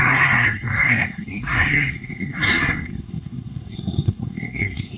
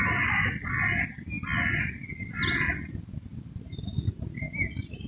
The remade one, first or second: first